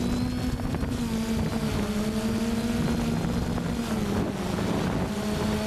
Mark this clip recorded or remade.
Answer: recorded